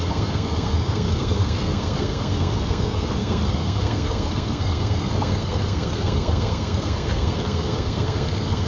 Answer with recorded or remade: remade